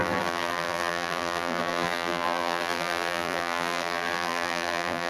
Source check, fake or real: fake